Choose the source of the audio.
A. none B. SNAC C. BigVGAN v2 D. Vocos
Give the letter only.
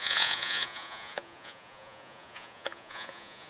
D